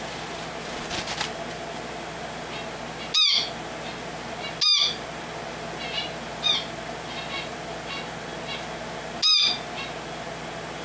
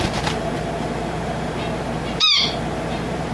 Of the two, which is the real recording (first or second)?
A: first